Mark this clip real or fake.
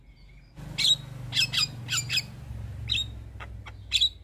real